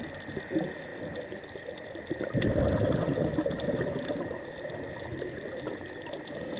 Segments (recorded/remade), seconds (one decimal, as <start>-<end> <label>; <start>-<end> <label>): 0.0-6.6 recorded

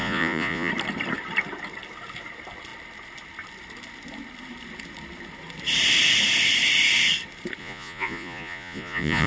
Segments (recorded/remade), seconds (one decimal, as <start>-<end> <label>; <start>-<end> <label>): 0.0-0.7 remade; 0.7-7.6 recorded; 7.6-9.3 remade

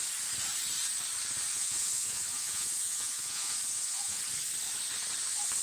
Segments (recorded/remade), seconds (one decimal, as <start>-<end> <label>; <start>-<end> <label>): 0.0-1.5 recorded; 1.5-4.2 remade; 4.2-5.6 recorded

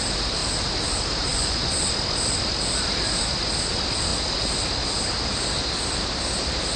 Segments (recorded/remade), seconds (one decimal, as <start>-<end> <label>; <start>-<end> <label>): 0.0-1.3 recorded; 1.3-1.8 remade; 1.8-6.8 recorded

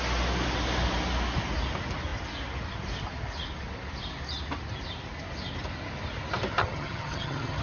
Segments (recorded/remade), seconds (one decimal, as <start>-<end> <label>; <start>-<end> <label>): 0.0-6.6 recorded; 6.6-7.6 remade